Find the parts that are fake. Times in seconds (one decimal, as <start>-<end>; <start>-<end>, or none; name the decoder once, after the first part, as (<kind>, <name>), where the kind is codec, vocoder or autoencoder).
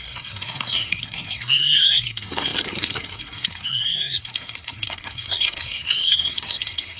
0.0-7.0 (codec, SNAC)